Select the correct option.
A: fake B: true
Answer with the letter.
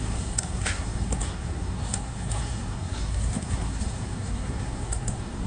A